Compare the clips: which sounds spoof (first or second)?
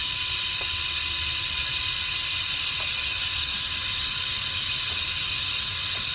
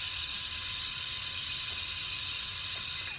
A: second